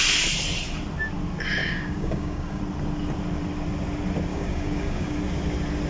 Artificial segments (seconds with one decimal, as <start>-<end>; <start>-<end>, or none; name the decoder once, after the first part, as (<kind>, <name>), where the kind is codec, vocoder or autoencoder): 1.6-2.6 (codec, DAC); 4.3-5.2